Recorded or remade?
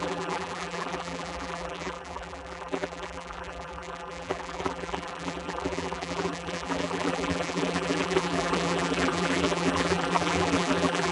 remade